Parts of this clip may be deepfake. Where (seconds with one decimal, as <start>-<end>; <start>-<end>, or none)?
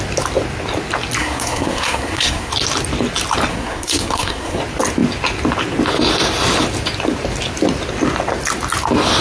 1.2-2.5; 3.5-4.6